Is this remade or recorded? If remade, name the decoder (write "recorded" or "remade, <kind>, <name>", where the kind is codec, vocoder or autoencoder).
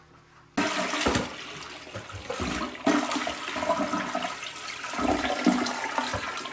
recorded